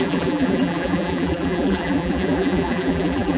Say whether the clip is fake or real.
fake